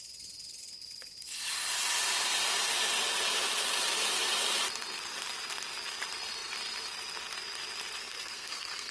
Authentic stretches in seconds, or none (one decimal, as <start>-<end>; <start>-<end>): 0.0-8.0